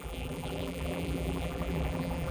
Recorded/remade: remade